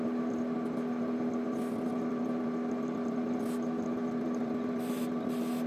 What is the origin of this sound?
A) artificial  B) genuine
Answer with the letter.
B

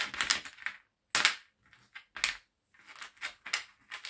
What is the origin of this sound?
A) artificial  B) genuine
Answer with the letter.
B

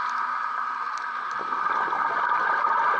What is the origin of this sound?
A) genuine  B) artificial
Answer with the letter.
A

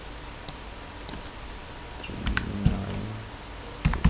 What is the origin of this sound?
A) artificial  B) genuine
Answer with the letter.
B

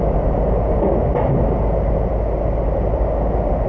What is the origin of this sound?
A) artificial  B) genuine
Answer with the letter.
B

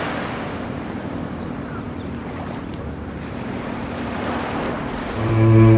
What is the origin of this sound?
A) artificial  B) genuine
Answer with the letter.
A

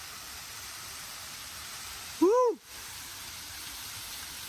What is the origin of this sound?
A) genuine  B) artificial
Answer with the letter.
B